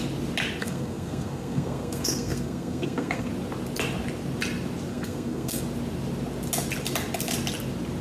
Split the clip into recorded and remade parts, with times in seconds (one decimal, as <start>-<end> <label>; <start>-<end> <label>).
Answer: 0.0-0.6 recorded; 0.6-3.3 remade; 3.3-4.9 recorded; 4.9-5.6 remade; 5.6-8.0 recorded